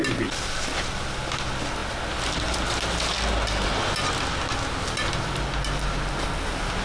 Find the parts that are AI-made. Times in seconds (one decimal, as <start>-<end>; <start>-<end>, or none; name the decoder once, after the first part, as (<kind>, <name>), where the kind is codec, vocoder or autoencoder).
none